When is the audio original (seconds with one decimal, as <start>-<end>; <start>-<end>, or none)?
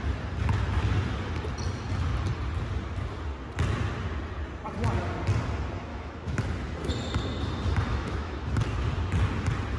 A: 0.0-5.9; 6.4-7.9; 8.5-9.8